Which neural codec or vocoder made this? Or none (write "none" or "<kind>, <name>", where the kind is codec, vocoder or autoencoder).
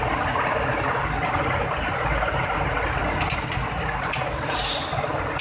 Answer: none